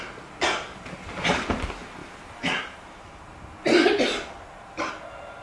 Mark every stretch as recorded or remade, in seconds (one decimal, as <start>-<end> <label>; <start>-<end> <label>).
0.0-5.4 recorded